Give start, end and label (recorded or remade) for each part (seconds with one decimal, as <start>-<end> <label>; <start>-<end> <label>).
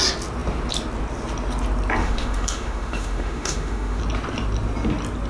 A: 0.0-2.0 recorded; 2.0-4.0 remade; 4.0-5.3 recorded